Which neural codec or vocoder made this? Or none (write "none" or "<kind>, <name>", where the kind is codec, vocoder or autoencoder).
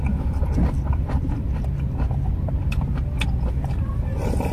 none